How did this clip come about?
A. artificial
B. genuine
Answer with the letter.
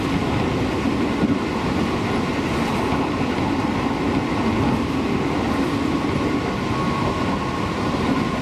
B